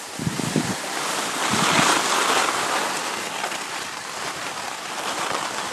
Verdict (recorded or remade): recorded